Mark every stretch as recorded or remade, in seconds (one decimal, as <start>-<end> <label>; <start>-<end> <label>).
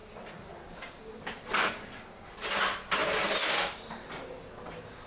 0.0-1.7 remade; 1.7-5.1 recorded